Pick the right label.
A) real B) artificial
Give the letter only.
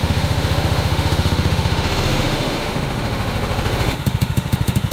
B